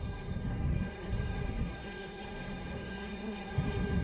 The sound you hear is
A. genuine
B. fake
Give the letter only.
B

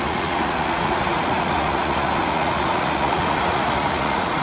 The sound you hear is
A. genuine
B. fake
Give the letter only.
B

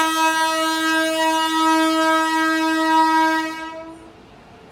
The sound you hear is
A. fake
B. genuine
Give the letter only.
B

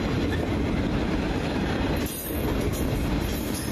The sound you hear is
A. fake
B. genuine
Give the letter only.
B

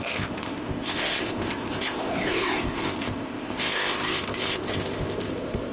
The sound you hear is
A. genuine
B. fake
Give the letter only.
B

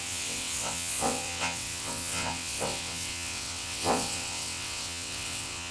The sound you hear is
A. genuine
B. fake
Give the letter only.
B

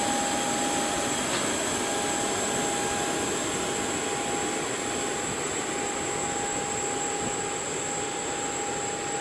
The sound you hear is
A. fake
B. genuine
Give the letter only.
B